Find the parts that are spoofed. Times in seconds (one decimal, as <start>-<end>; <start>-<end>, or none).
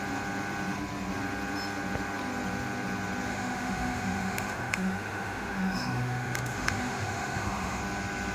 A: 3.3-7.8